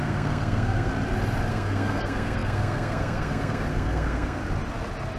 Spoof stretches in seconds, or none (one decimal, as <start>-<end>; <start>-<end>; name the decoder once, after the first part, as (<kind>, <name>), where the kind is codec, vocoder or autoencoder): 0.0-0.9 (codec, SNAC); 1.5-4.4